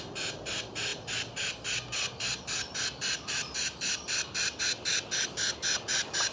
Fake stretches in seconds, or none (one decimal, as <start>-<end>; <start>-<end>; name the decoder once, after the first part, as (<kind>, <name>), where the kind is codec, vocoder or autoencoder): none